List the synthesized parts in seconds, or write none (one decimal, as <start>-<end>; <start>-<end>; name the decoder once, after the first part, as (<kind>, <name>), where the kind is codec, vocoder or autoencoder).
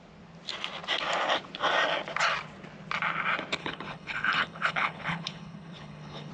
3.6-6.3 (codec, HILCodec)